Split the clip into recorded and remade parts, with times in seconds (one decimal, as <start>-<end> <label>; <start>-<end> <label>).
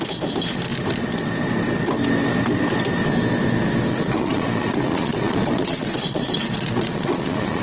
0.0-3.9 recorded; 3.9-7.6 remade